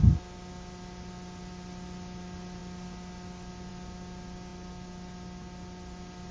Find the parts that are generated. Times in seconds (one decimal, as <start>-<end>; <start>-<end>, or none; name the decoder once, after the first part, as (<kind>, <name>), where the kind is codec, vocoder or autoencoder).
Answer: none